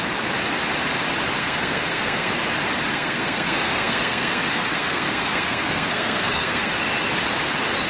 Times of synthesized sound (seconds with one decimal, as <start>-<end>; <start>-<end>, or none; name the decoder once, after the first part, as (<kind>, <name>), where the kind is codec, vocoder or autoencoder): 1.4-2.3 (codec, SNAC); 2.9-6.7